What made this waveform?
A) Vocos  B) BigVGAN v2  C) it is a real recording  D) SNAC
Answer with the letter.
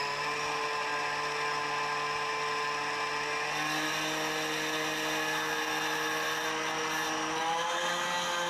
C